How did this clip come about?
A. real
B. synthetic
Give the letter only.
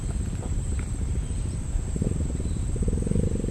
A